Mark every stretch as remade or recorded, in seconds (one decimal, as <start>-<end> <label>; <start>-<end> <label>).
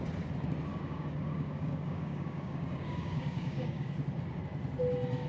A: 0.0-0.7 recorded; 0.7-3.9 remade; 3.9-5.3 recorded